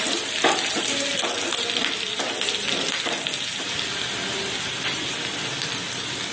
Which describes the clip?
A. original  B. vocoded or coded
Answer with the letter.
A